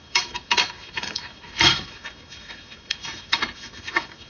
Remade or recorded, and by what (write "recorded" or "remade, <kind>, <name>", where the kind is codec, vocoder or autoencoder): remade, autoencoder, DAC-VAE